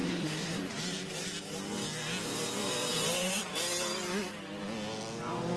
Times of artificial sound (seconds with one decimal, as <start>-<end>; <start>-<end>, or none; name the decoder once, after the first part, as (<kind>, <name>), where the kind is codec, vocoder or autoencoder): 0.0-0.6 (codec, SNAC)